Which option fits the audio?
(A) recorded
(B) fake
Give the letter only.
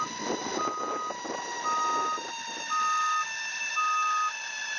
A